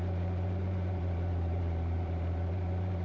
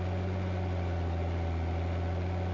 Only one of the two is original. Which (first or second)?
second